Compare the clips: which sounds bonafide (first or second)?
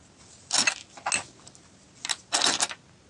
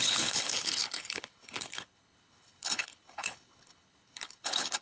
first